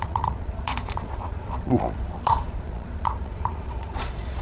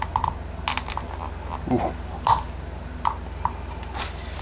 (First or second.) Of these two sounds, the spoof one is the first